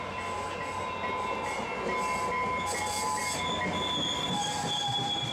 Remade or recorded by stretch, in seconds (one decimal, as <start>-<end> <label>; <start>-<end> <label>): 0.0-5.3 recorded